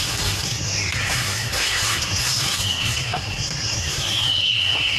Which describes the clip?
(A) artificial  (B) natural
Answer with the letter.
A